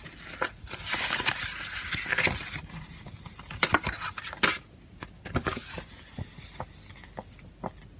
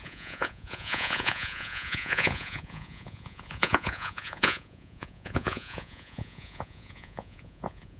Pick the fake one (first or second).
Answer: second